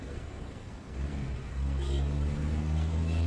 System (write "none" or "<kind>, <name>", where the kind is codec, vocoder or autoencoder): codec, SNAC